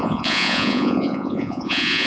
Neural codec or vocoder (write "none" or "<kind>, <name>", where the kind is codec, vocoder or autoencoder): vocoder, Vocos